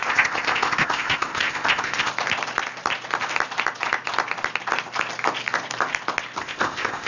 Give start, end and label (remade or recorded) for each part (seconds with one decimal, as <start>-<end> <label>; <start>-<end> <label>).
0.0-2.1 remade; 2.1-6.4 recorded; 6.4-7.1 remade